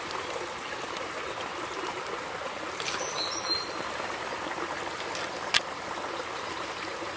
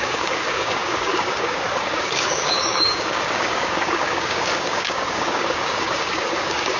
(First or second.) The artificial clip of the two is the second